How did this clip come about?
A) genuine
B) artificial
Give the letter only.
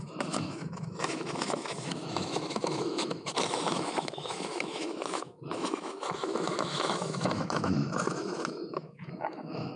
B